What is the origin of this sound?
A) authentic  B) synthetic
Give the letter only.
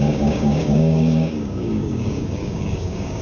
B